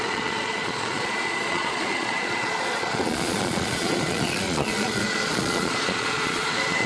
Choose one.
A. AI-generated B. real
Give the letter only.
A